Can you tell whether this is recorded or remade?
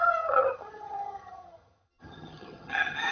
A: remade